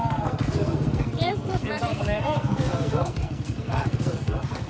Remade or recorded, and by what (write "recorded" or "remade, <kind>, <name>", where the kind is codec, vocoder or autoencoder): remade, codec, SNAC